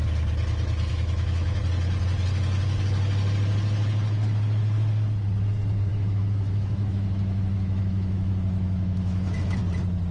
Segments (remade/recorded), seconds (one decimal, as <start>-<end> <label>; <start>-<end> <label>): 0.0-0.9 recorded; 0.9-1.6 remade; 1.6-5.9 recorded; 5.9-9.6 remade; 9.6-10.1 recorded